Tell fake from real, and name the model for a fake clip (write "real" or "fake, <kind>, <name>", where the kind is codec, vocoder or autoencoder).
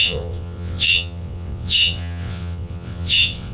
fake, vocoder, WaveNeXt